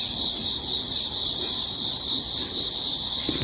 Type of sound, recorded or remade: recorded